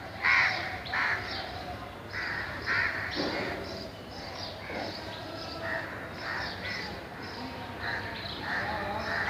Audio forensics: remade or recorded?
remade